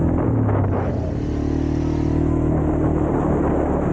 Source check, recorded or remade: recorded